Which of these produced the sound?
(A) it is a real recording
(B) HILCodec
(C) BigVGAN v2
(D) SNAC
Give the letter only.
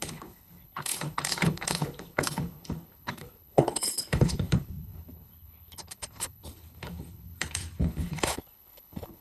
B